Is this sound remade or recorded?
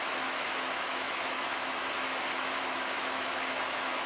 remade